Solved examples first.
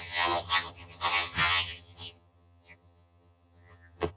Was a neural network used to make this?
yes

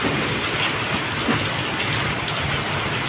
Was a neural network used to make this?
no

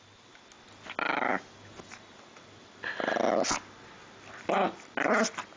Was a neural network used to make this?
no